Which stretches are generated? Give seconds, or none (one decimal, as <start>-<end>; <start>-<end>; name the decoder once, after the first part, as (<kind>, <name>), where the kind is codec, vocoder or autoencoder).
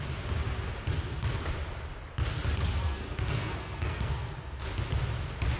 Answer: 2.8-4.3 (codec, SNAC)